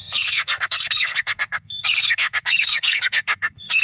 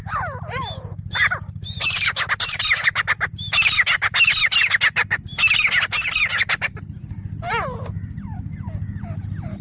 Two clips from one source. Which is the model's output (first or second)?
first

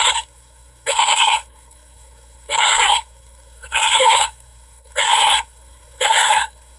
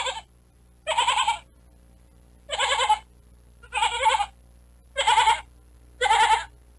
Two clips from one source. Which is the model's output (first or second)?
first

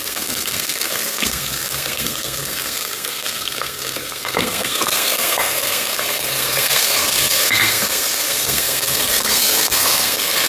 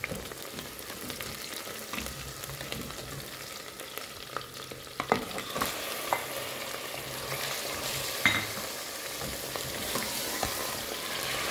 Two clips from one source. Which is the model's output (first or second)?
first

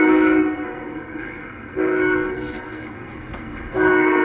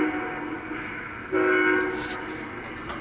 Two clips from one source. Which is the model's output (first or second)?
first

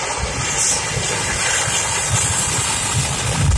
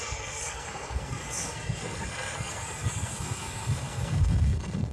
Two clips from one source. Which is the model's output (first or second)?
second